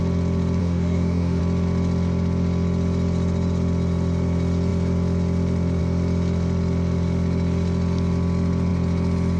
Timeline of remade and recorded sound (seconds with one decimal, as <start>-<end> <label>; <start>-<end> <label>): 0.0-0.6 recorded; 0.6-1.4 remade; 1.4-9.4 recorded